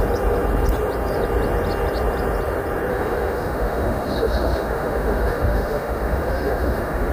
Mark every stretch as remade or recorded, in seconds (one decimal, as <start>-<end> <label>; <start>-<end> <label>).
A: 0.0-2.9 recorded; 2.9-7.1 remade